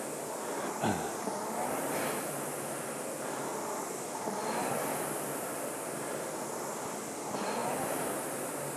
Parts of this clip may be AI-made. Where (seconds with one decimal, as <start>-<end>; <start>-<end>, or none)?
none